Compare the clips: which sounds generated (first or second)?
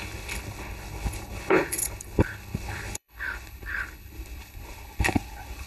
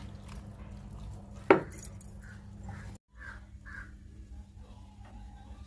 first